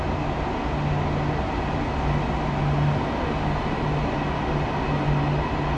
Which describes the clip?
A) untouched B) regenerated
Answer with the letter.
A